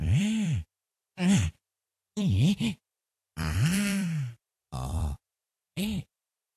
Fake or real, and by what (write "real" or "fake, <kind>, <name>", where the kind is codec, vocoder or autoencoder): fake, vocoder, BigVGAN v2